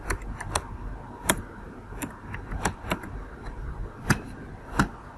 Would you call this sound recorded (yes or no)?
yes